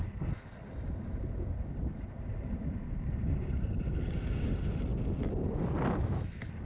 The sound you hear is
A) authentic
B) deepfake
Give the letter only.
A